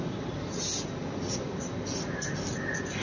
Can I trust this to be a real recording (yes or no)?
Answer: yes